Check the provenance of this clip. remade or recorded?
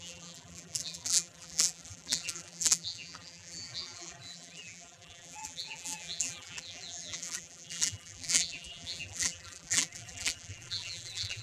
remade